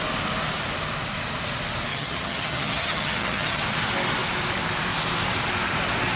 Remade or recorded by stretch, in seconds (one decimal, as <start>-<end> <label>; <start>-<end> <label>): 0.0-1.9 recorded; 1.9-3.6 remade; 3.6-6.2 recorded